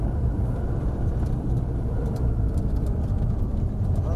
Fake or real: fake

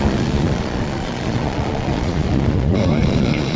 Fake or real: fake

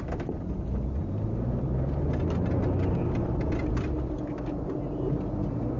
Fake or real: real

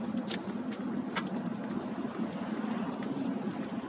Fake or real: real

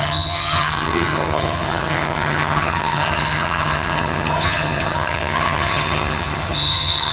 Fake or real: fake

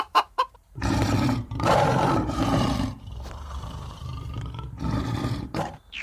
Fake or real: fake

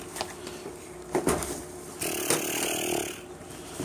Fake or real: fake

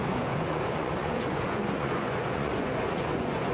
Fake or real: fake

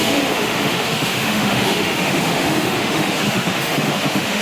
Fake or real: fake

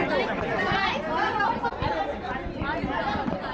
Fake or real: fake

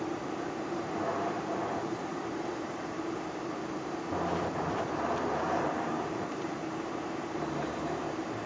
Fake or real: fake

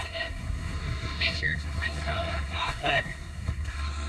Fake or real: fake